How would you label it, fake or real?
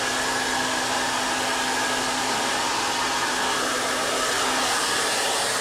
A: real